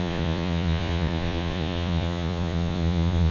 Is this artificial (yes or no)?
yes